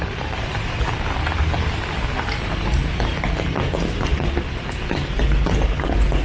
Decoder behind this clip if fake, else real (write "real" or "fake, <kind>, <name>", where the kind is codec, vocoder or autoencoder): real